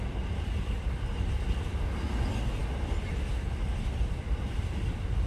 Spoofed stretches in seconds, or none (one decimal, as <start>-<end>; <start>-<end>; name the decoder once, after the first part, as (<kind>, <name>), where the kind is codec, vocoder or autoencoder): none